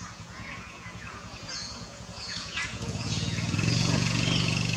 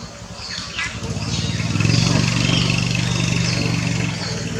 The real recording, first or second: second